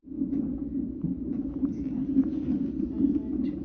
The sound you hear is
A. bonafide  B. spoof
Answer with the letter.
A